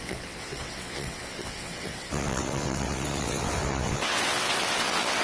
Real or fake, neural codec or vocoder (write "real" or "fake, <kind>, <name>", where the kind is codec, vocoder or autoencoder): fake, vocoder, WaveNeXt